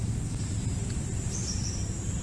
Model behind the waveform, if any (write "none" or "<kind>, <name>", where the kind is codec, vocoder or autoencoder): none